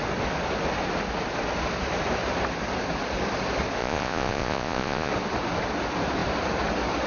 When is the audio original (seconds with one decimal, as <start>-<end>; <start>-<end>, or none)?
0.0-3.8; 5.1-7.1